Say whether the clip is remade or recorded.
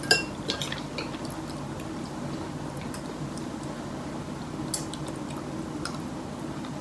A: recorded